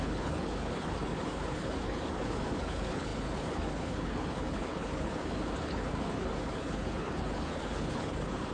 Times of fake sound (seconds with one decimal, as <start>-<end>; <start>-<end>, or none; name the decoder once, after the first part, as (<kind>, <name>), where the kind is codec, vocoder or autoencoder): 0.0-8.5 (codec, HILCodec)